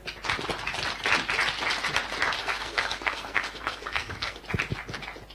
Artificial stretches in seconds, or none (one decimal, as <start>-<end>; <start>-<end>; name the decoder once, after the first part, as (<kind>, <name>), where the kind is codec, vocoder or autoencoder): 2.4-4.4 (codec, SNAC)